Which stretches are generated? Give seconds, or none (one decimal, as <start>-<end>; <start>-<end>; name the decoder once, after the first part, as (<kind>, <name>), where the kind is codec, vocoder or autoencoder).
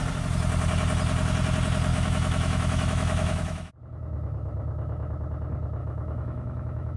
1.9-3.7 (autoencoder, DAC-VAE); 5.8-7.0